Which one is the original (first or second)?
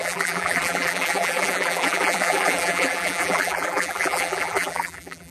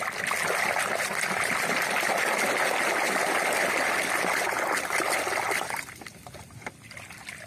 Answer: second